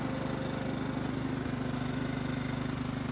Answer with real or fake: real